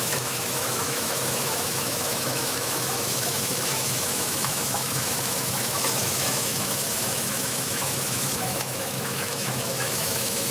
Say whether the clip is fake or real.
fake